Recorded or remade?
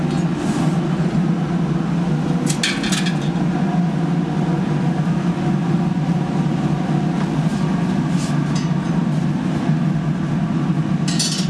recorded